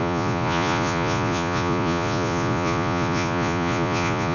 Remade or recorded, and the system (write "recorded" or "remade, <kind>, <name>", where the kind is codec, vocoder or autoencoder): remade, vocoder, Vocos